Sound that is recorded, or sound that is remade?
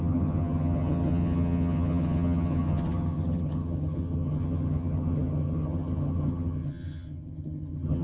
remade